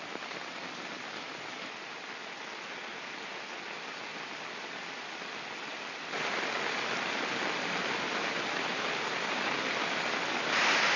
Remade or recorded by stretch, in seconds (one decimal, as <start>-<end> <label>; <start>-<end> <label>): 0.0-11.0 recorded